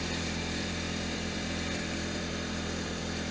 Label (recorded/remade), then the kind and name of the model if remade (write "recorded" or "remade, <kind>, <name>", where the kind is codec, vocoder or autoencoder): remade, vocoder, BigVGAN v2